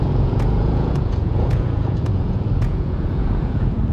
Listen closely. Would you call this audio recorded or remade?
remade